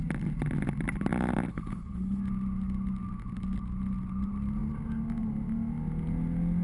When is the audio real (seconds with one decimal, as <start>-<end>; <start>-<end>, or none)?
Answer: 0.0-1.5; 2.2-6.6